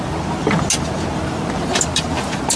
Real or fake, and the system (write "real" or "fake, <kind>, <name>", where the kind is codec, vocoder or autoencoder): real